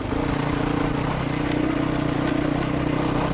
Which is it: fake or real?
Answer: real